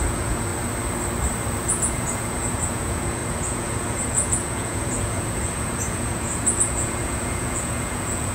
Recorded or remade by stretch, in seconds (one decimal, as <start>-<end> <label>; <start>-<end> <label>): 0.0-0.5 remade; 0.5-1.6 recorded; 1.6-8.3 remade